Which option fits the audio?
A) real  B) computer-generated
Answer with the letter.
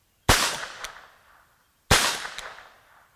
A